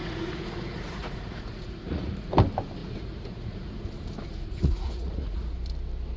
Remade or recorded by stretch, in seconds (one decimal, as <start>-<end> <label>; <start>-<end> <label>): 0.0-2.3 remade; 2.3-2.8 recorded; 2.8-3.7 remade; 3.7-4.3 recorded; 4.3-5.5 remade; 5.5-6.2 recorded